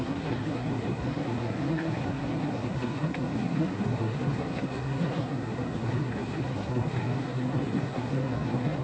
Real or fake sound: fake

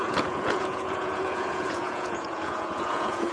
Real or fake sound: fake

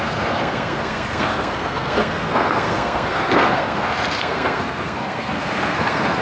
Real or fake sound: fake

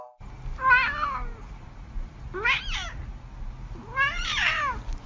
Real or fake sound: real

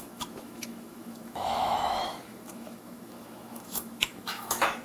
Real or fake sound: fake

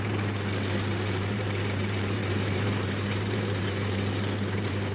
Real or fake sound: fake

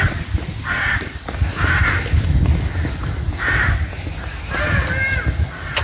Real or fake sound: real